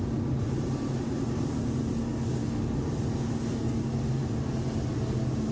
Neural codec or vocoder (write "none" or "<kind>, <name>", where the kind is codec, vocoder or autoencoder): none